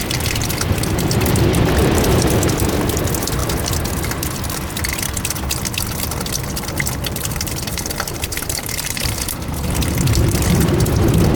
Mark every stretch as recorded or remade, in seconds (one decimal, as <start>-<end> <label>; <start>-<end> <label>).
0.0-1.8 recorded; 1.8-2.3 remade; 2.3-7.7 recorded; 7.7-9.2 remade; 9.2-11.4 recorded